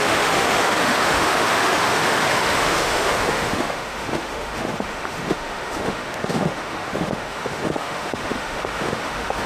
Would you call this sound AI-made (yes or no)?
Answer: yes